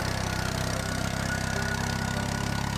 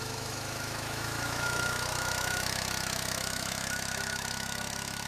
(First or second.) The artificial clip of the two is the second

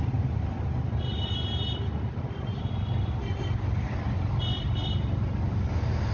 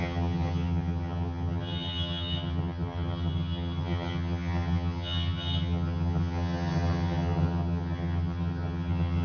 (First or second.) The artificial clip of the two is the second